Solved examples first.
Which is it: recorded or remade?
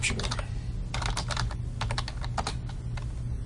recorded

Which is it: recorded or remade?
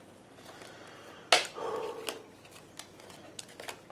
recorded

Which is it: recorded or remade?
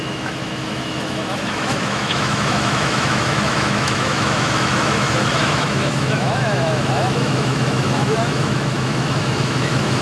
remade